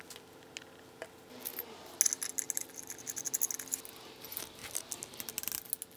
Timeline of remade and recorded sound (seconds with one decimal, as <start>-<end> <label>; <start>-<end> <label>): 0.0-6.0 recorded